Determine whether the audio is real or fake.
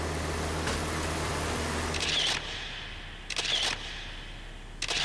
real